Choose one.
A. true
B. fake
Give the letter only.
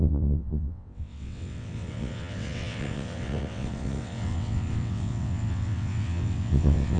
B